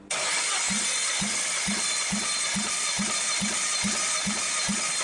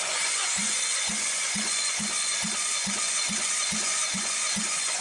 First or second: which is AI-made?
second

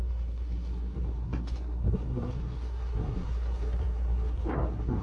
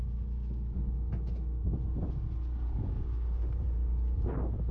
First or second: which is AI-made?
first